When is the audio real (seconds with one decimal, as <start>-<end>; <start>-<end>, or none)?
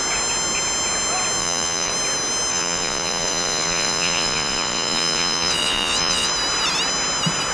0.0-1.4; 1.9-2.5; 6.3-7.5